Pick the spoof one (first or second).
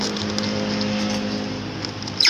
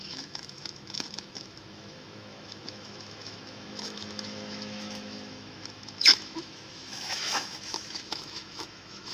second